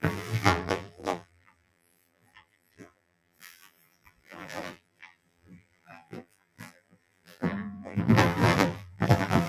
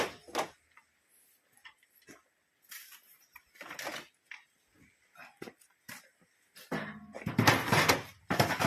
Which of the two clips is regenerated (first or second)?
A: first